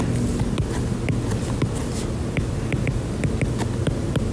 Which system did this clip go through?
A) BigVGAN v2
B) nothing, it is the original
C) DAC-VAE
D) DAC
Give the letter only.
B